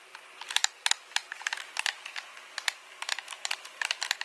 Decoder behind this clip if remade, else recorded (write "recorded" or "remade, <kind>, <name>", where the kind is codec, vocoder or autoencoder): recorded